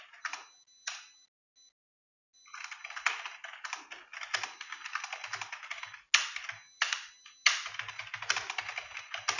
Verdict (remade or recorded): recorded